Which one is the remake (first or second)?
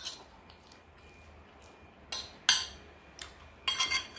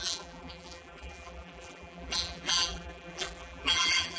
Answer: second